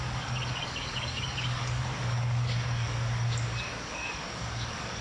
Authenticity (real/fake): fake